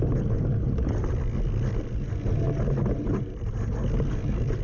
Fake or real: real